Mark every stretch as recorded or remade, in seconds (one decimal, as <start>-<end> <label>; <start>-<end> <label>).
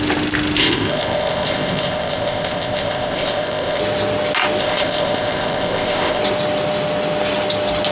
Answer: 0.0-0.6 recorded; 0.6-3.8 remade; 3.8-4.6 recorded; 4.6-6.2 remade; 6.2-7.9 recorded